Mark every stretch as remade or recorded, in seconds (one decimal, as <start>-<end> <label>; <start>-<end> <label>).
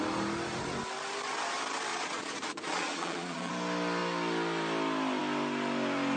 0.0-1.9 recorded; 1.9-3.5 remade; 3.5-6.2 recorded